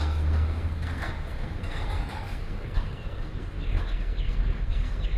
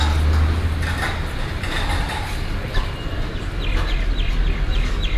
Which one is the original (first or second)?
second